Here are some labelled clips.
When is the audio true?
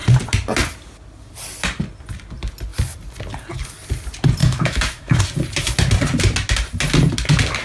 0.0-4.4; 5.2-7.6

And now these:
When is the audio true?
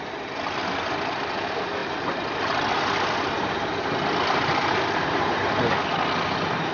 0.0-6.7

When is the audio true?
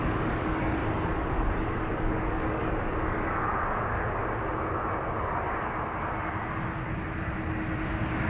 0.8-1.6; 3.5-8.3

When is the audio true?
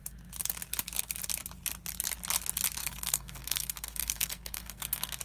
0.0-2.8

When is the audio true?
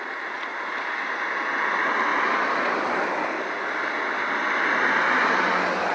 0.0-5.9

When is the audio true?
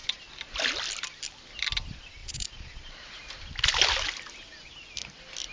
0.0-2.2; 2.9-5.5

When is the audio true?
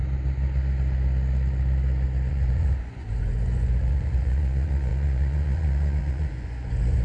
0.0-2.3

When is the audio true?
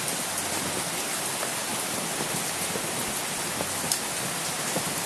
0.0-5.1